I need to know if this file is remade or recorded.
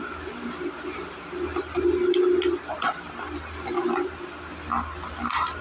recorded